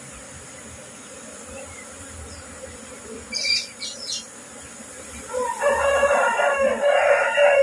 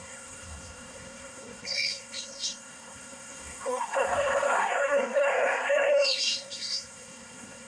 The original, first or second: first